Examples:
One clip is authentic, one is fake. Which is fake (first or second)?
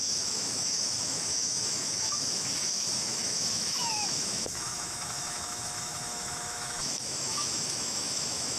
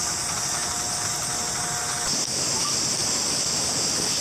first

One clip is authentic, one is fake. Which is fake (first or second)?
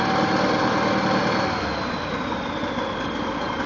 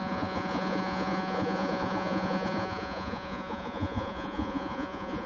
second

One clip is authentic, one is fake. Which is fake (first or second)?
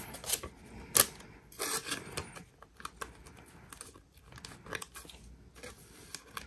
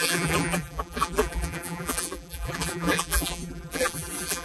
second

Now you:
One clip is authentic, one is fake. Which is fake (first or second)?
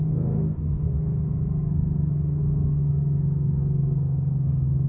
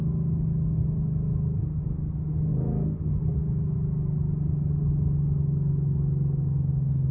first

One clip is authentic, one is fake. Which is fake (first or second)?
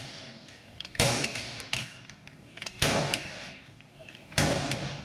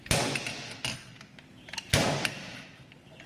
first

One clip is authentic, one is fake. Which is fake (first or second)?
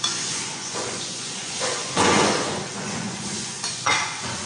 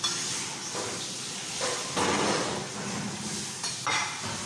first